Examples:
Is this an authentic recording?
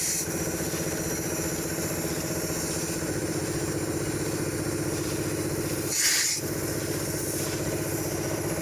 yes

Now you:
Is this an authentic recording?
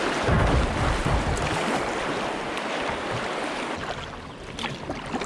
yes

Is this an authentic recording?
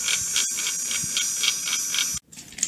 yes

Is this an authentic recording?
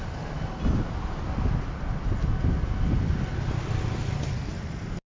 yes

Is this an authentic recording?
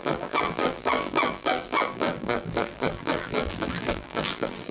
no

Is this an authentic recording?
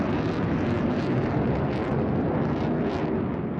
yes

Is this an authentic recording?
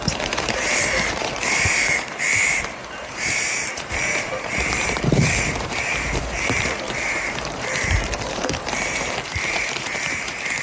no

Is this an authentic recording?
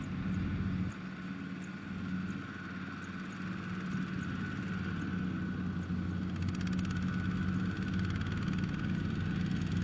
yes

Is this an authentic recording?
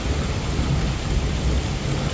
yes